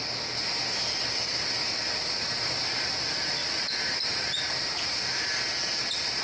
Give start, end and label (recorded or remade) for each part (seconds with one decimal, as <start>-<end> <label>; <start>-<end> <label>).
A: 0.0-1.8 recorded; 1.8-2.9 remade; 2.9-3.4 recorded; 3.4-4.4 remade; 4.4-6.2 recorded